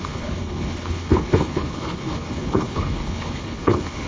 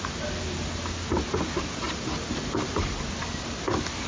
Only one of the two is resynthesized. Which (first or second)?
first